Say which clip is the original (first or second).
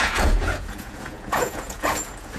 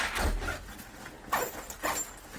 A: second